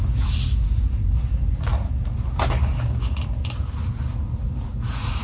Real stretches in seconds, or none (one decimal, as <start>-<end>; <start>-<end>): 0.0-5.2